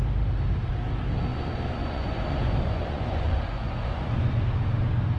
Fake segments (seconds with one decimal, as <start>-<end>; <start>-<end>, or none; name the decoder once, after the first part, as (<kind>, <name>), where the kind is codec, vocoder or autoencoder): 1.3-4.4 (vocoder, Vocos)